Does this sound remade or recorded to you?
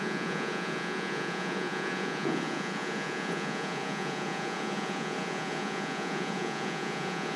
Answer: remade